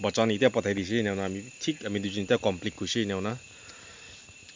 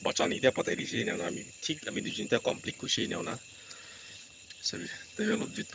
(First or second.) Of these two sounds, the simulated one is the second